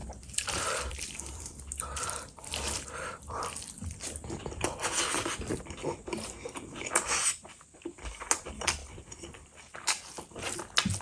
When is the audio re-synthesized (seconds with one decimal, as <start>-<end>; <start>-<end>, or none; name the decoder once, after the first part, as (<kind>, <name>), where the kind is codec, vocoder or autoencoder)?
0.0-3.4 (vocoder, BigVGAN v2); 8.8-9.8